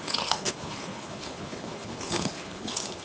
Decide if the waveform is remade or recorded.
remade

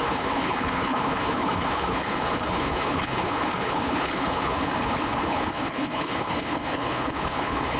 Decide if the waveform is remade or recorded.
remade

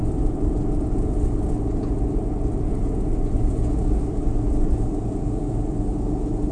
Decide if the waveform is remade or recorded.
recorded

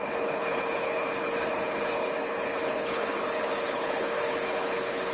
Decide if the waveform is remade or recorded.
remade